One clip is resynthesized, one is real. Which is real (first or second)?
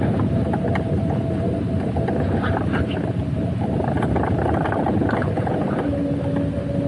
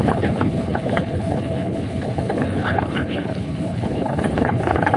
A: first